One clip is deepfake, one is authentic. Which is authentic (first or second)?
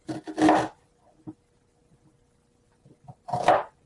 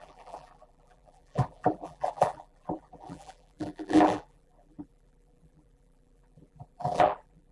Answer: first